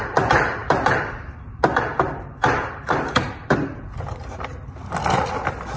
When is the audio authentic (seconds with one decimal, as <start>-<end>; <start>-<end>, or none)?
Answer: 0.0-5.8